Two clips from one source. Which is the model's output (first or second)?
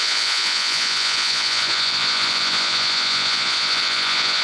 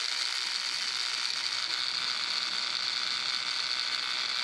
first